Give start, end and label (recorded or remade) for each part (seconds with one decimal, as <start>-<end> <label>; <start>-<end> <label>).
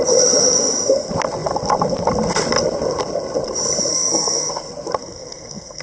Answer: 0.0-3.9 recorded; 3.9-4.5 remade; 4.5-5.0 recorded; 5.0-5.8 remade